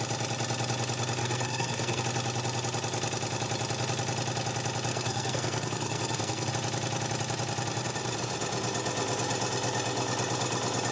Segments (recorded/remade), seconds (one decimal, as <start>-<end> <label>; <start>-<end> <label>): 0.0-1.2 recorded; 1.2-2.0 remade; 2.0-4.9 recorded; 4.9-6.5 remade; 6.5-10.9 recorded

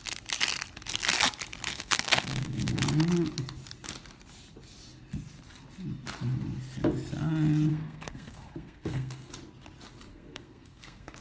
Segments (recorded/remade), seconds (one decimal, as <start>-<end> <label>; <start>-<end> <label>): 0.0-1.7 recorded; 1.7-2.8 remade; 2.8-7.7 recorded; 7.7-9.3 remade; 9.3-10.1 recorded; 10.1-11.2 remade

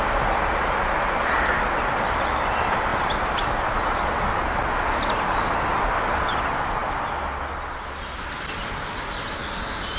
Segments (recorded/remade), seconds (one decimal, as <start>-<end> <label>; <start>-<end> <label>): 0.0-10.0 recorded

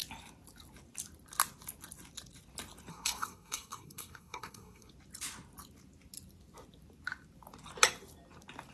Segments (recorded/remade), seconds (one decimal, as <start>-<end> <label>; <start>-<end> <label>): 0.0-2.9 recorded; 2.9-4.9 remade; 4.9-8.7 recorded

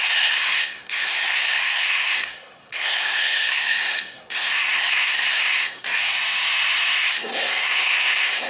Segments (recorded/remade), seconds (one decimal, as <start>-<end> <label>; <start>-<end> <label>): 0.0-6.0 remade; 6.0-7.0 recorded; 7.0-8.5 remade

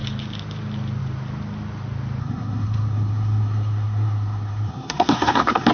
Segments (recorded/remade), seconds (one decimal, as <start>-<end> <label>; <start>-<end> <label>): 0.0-2.2 recorded; 2.2-5.7 remade